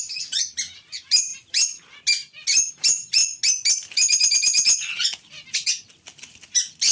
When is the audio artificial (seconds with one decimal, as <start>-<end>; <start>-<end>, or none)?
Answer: 0.0-1.3; 2.7-3.2; 6.2-6.9